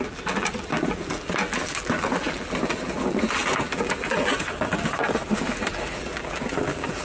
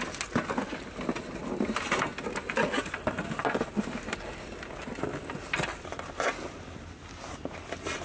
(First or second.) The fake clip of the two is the first